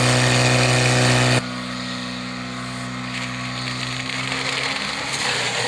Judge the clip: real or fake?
real